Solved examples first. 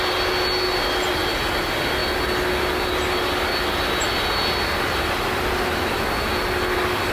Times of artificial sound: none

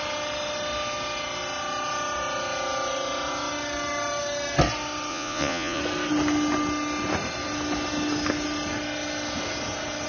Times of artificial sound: 5.1-5.8 (vocoder, Vocos)

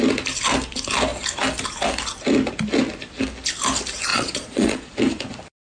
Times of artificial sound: 4.1-4.9 (vocoder, Vocos)

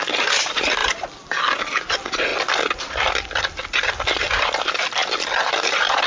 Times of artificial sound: 0.0-2.3 (vocoder, BigVGAN v2); 4.2-5.0; 5.5-6.1

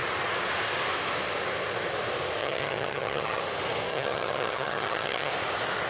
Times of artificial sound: 2.4-3.4 (vocoder, HiFi-GAN); 3.9-5.3

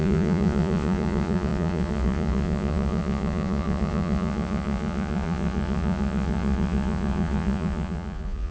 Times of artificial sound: 0.0-8.5 (vocoder, Vocos)

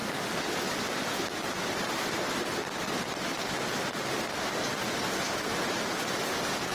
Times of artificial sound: none